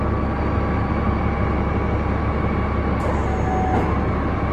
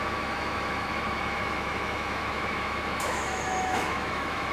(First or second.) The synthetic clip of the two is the second